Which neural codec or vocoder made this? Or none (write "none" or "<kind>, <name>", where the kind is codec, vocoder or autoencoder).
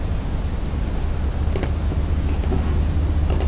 none